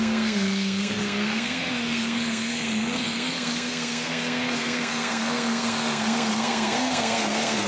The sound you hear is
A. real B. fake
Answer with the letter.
B